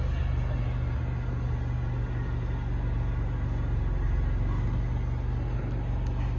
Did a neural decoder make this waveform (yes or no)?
no